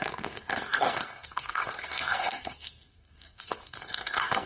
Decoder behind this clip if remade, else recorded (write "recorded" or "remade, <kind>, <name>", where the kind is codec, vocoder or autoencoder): remade, codec, SNAC